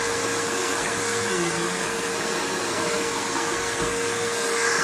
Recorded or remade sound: remade